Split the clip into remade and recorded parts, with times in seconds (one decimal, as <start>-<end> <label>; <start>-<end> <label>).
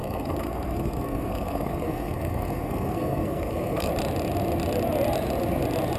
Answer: 0.0-3.9 remade; 3.9-6.0 recorded